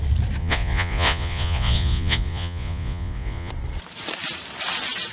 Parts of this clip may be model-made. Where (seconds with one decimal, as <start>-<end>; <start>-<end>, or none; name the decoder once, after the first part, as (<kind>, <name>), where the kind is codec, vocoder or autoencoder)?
0.4-3.5 (vocoder, Vocos)